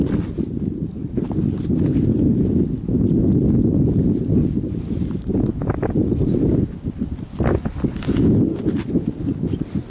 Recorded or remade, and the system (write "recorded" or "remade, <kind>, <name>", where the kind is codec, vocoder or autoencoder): recorded